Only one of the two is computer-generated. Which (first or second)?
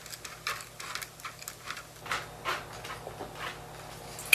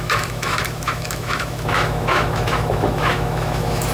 second